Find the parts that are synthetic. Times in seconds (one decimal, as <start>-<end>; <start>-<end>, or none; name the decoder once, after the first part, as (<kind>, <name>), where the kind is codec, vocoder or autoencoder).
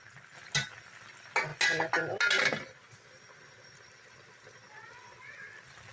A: none